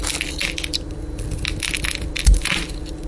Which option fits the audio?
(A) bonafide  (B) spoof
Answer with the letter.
A